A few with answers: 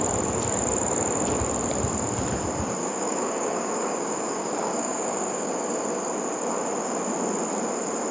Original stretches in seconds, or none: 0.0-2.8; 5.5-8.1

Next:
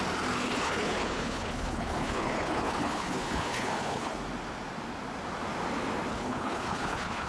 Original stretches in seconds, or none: 0.0-0.4; 4.1-6.1

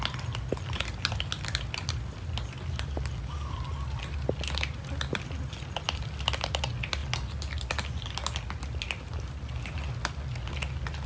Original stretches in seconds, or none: 0.0-11.1

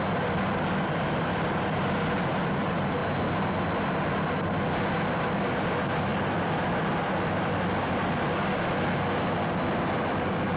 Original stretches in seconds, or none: 0.0-10.6

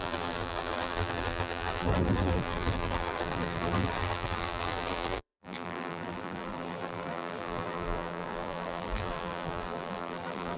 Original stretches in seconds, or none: none